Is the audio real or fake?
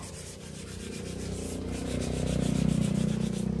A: fake